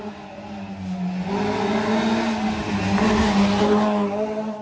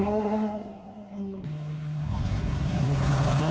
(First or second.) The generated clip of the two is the second